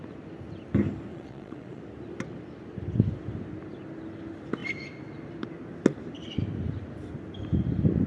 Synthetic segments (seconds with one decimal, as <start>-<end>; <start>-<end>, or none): 1.1-1.8